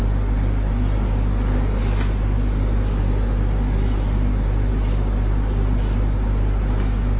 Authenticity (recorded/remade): recorded